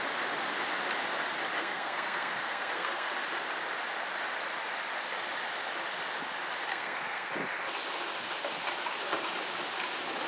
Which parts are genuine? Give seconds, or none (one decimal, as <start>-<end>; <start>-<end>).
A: 0.0-1.6; 3.1-6.7; 7.3-10.3